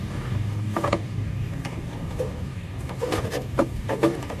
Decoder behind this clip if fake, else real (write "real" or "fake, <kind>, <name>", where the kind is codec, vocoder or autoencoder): fake, codec, DAC